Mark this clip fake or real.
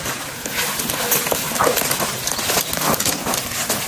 real